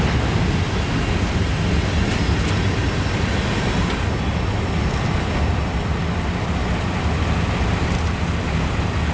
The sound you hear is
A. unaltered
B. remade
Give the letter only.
A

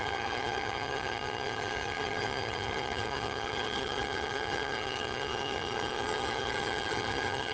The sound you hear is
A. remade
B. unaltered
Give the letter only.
A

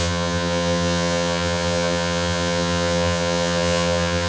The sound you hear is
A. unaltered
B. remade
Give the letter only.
B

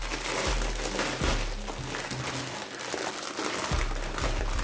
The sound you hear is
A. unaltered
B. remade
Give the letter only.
A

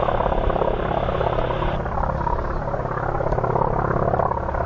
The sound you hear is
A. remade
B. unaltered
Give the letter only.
B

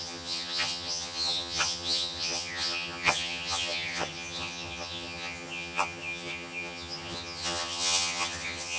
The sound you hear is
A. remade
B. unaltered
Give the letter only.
A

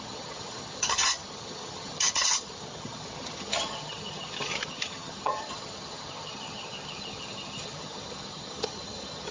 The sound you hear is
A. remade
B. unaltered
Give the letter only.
A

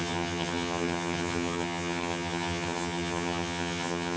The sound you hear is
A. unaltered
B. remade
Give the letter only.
B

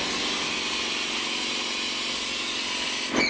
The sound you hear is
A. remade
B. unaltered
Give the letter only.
B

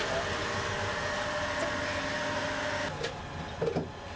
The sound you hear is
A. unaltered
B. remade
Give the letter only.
A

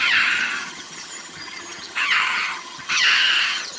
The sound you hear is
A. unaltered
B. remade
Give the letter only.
B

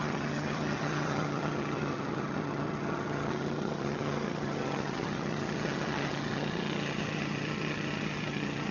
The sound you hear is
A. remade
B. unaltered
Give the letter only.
A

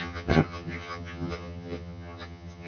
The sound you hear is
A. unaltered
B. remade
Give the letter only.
B